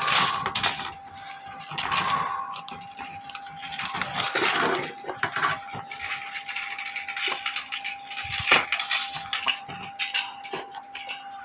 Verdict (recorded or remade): recorded